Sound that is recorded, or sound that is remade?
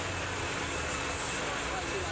recorded